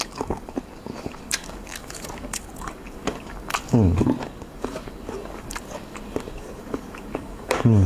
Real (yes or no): no